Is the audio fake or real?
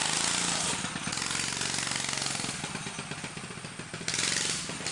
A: real